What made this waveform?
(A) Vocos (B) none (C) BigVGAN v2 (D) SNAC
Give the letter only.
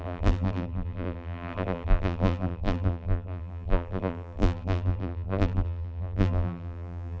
C